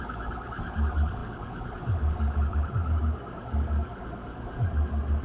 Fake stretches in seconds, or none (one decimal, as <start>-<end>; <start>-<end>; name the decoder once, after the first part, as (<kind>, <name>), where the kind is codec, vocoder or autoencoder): 0.0-5.2 (codec, DAC)